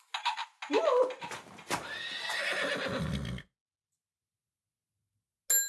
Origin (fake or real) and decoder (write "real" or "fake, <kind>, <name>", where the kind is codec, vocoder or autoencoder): real